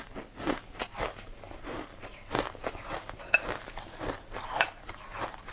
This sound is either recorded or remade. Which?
recorded